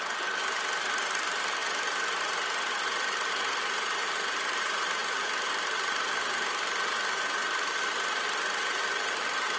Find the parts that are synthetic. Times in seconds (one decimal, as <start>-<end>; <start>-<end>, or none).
1.6-3.3; 5.0-7.7